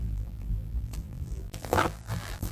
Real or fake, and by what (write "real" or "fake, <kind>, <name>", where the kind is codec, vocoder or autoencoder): fake, vocoder, BigVGAN v2